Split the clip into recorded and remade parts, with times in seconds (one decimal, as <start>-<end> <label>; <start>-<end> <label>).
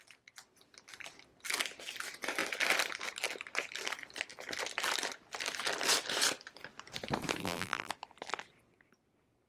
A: 0.0-7.4 recorded; 7.4-7.9 remade; 7.9-9.5 recorded